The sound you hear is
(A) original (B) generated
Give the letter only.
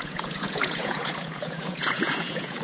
B